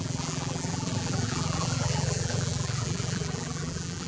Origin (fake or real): fake